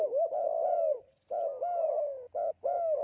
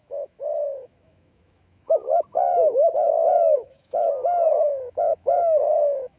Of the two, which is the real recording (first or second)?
first